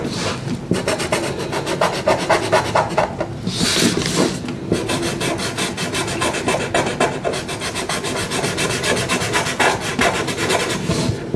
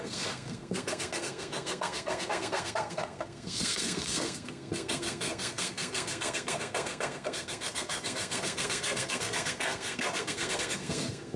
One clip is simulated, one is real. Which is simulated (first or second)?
second